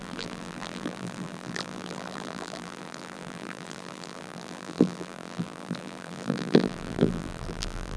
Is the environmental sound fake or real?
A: fake